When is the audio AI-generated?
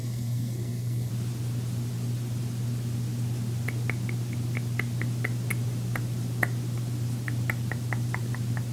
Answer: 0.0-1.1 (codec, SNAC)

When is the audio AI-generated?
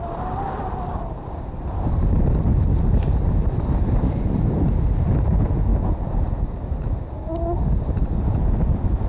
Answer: none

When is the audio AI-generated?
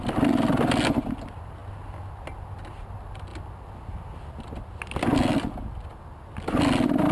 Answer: none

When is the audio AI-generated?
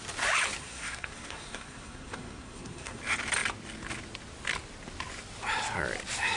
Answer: 0.6-3.0 (codec, SNAC)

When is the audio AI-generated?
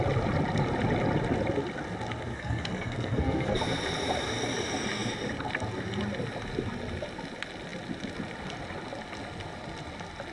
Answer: 2.3-3.6 (codec, SNAC)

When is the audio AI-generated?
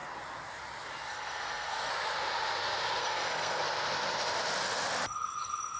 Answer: 1.1-1.9 (codec, SNAC); 3.0-3.6